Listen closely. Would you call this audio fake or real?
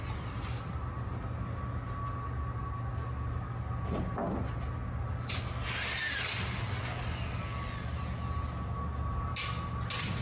real